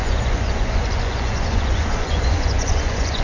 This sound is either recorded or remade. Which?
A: remade